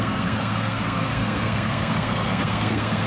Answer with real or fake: fake